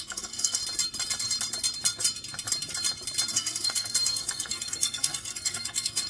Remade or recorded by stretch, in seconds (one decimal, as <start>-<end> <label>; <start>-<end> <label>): 0.0-0.6 remade; 0.6-3.3 recorded; 3.3-6.1 remade